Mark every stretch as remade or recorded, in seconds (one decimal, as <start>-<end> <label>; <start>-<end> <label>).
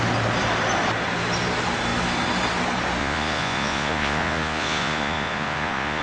0.0-3.0 recorded; 3.0-6.0 remade